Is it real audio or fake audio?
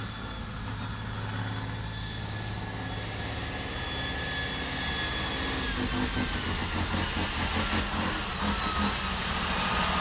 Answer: real